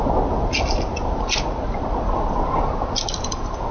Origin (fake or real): real